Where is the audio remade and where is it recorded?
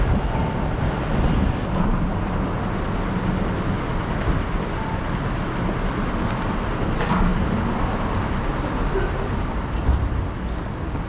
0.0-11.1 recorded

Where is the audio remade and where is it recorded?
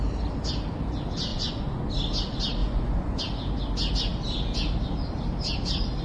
0.0-1.3 recorded; 1.3-1.9 remade; 1.9-2.6 recorded; 2.6-3.2 remade; 3.2-6.0 recorded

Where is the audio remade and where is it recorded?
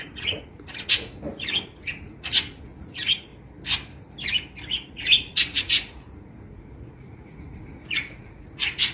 0.0-3.3 remade; 3.3-4.9 recorded; 4.9-8.9 remade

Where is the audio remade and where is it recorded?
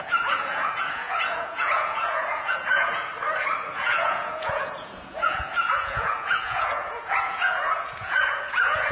0.0-3.1 remade; 3.1-3.7 recorded; 3.7-8.9 remade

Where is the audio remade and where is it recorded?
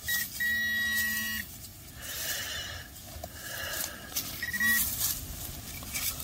0.0-6.2 recorded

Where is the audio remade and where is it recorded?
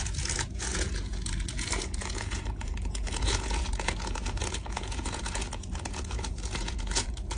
0.0-7.4 remade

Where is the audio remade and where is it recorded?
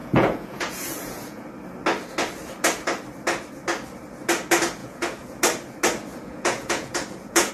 0.0-1.5 remade; 1.5-4.8 recorded; 4.8-5.4 remade; 5.4-6.1 recorded; 6.1-7.5 remade